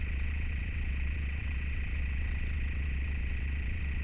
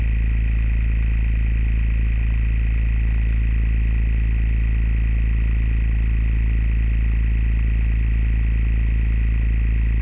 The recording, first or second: second